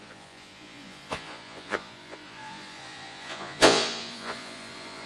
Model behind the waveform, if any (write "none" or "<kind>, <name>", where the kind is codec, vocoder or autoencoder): vocoder, Vocos